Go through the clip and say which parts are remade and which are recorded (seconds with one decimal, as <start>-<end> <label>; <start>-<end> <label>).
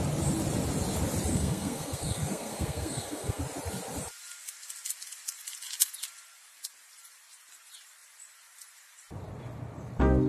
0.0-1.3 recorded; 1.3-3.4 remade; 3.4-10.3 recorded